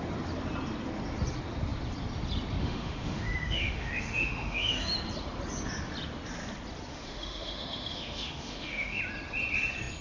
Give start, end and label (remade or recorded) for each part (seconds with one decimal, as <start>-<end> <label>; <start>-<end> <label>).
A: 0.0-2.6 recorded; 2.6-4.9 remade; 4.9-6.9 recorded; 6.9-9.0 remade; 9.0-10.0 recorded